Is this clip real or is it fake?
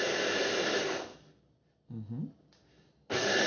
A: real